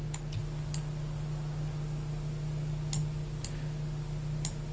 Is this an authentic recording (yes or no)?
yes